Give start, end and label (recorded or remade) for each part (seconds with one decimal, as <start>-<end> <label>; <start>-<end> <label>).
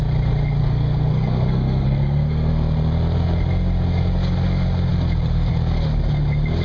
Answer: 0.0-0.6 recorded; 0.6-2.5 remade; 2.5-6.6 recorded